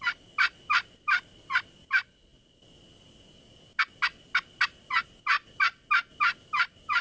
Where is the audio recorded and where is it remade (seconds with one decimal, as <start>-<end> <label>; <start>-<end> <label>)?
0.0-7.0 recorded